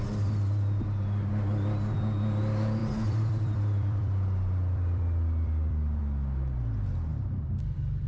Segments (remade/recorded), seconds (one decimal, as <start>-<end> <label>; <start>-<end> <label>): 0.0-2.8 recorded; 2.8-6.0 remade; 6.0-7.1 recorded; 7.1-7.6 remade; 7.6-8.1 recorded